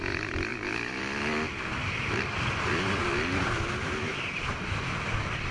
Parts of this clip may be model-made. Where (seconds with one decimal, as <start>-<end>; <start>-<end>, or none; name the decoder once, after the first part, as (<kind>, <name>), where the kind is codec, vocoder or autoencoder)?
0.5-1.0 (vocoder, BigVGAN v2); 1.8-2.6; 4.1-4.8